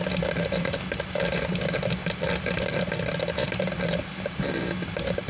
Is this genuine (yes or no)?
yes